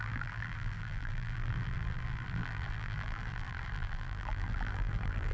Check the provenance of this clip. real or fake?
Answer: fake